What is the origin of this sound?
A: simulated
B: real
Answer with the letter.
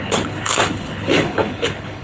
A